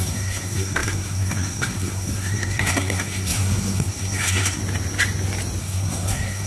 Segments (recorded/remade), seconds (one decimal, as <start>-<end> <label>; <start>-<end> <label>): 0.0-4.6 remade; 4.6-5.6 recorded; 5.6-6.5 remade